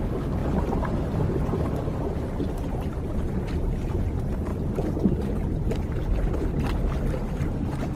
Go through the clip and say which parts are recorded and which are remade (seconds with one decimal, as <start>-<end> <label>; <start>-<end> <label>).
0.0-8.0 recorded